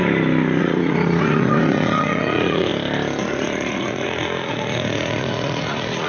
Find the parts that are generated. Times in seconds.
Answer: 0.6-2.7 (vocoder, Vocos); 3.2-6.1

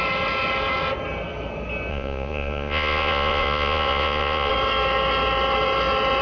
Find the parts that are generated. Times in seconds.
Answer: 1.9-4.5 (vocoder, Vocos)

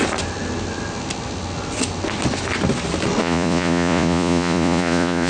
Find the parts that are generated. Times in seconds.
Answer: 3.2-5.3 (vocoder, Vocos)

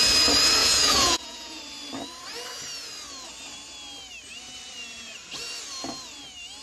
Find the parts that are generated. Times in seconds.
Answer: 0.6-1.6 (vocoder, Vocos)

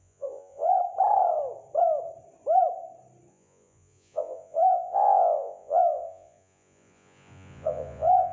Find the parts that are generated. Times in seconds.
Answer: 0.0-0.8 (vocoder, Vocos); 3.3-8.3

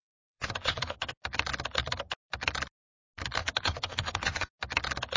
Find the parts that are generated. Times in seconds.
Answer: 0.0-1.1 (vocoder, Vocos); 3.4-4.5

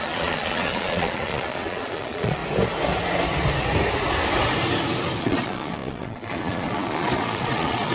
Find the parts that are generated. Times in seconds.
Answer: 0.0-2.4 (vocoder, Vocos); 5.2-7.9

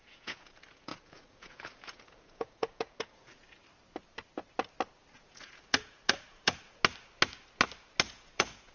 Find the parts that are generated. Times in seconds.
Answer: 0.0-3.6 (vocoder, Vocos); 5.2-6.8; 8.1-8.7